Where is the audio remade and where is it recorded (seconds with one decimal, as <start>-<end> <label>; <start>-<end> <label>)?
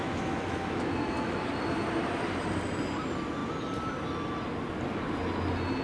0.0-1.5 remade; 1.5-5.8 recorded